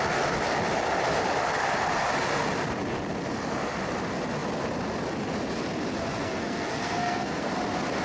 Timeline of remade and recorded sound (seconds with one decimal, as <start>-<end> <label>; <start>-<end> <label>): 0.0-6.2 recorded; 6.2-7.5 remade; 7.5-8.0 recorded